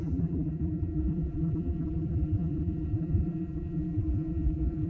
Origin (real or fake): fake